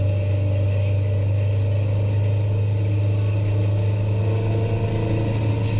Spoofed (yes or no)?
no